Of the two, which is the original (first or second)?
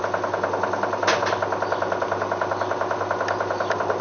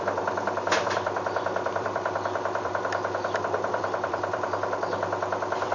first